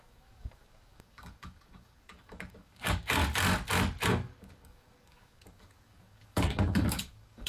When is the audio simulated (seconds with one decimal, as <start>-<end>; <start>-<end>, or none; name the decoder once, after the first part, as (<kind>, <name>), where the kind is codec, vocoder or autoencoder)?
0.0-3.2 (codec, DAC); 4.1-7.5